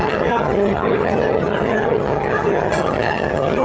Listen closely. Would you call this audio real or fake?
fake